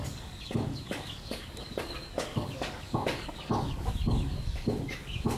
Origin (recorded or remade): remade